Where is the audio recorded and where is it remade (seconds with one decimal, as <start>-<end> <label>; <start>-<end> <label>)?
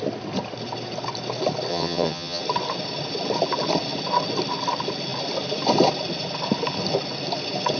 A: 0.0-1.7 recorded; 1.7-2.4 remade; 2.4-7.8 recorded